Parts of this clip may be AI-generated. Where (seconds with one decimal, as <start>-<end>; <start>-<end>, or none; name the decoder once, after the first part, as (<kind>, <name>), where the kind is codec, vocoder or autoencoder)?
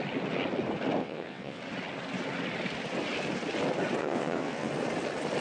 1.0-1.6 (vocoder, WaveNeXt); 4.0-4.7